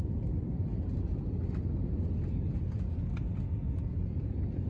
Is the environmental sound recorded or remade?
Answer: recorded